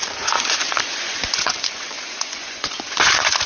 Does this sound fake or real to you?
fake